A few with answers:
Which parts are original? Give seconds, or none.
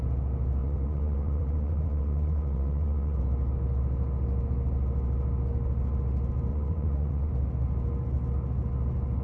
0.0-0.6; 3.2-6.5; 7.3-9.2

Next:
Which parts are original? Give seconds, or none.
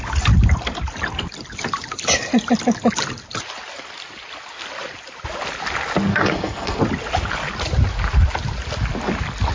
0.0-6.1; 6.8-9.5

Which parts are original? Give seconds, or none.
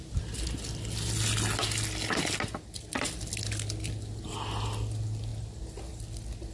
0.0-6.5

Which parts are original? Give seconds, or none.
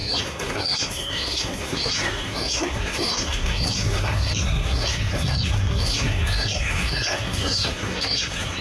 none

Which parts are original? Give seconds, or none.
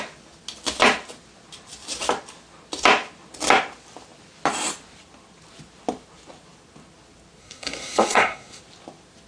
0.0-7.4; 8.6-9.3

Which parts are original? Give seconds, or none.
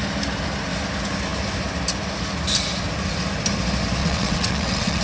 0.0-4.0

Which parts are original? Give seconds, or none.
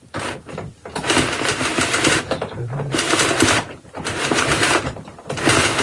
0.0-1.7; 5.2-5.8